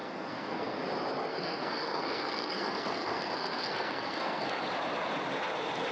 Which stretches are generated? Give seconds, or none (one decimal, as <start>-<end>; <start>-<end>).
0.0-0.8; 1.3-4.6